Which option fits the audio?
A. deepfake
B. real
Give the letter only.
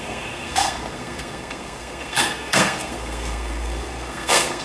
A